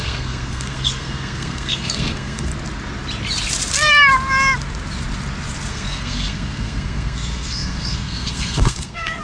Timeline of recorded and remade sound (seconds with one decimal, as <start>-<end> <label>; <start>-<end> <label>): 0.0-2.5 remade; 2.5-5.7 recorded; 5.7-9.2 remade